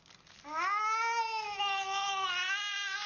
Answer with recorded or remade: recorded